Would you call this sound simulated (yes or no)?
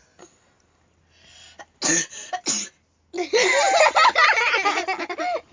no